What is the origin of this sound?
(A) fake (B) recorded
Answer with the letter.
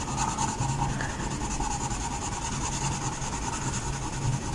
B